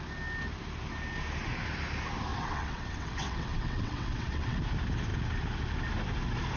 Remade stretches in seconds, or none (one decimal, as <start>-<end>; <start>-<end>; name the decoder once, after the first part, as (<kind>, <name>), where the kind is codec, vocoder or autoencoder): 2.3-4.6 (vocoder, WaveNeXt)